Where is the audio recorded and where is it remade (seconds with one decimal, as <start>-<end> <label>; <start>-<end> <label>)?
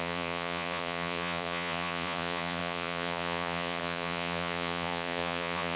0.0-5.8 remade